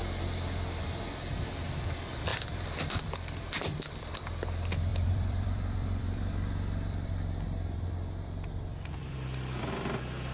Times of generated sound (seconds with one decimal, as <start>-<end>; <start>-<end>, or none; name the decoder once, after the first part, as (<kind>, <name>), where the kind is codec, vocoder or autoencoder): 2.3-4.1 (vocoder, BigVGAN v2); 4.9-9.7